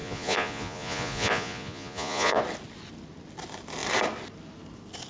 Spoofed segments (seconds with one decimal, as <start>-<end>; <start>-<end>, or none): 0.0-2.4